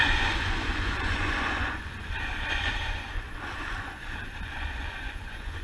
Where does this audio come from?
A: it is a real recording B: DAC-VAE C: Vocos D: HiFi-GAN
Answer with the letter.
C